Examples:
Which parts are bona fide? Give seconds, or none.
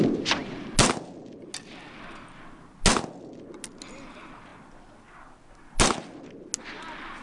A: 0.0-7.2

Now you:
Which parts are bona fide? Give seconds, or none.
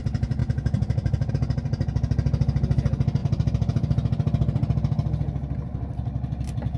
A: 0.0-6.8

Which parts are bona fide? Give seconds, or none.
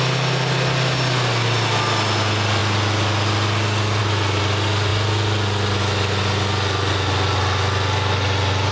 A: 0.0-8.7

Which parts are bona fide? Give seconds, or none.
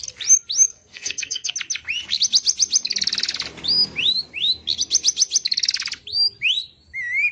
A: 0.0-0.7; 1.5-7.3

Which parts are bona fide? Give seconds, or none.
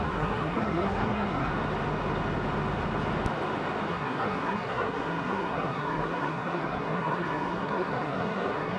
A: 1.5-3.9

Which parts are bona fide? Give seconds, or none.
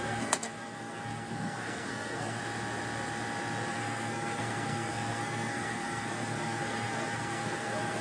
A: 2.4-3.7